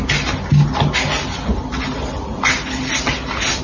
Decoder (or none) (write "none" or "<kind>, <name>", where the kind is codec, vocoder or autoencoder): none